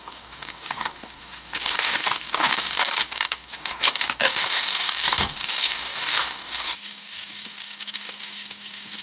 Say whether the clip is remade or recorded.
remade